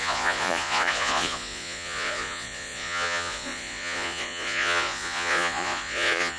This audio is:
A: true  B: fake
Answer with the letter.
B